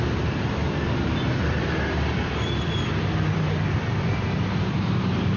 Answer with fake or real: fake